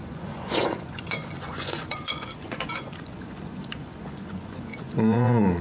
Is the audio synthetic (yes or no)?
yes